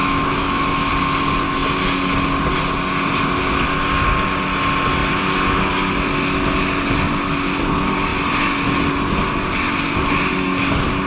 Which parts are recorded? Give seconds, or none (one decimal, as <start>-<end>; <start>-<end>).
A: 0.9-11.1